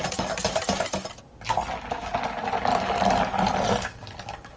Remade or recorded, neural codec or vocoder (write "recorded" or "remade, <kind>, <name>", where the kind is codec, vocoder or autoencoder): recorded